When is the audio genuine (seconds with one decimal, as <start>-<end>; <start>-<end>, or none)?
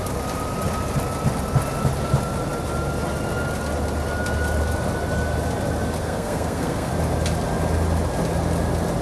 0.0-6.0; 6.9-9.0